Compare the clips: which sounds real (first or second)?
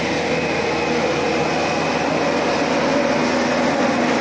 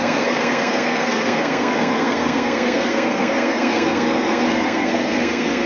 first